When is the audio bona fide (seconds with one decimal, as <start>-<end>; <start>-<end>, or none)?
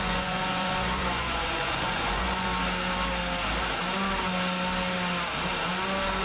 2.5-6.2